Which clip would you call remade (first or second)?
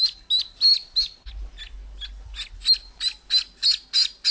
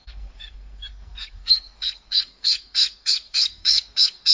second